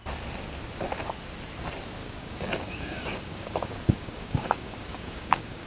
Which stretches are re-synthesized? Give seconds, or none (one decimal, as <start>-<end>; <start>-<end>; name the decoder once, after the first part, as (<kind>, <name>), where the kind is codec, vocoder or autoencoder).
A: 2.0-5.7 (codec, DAC)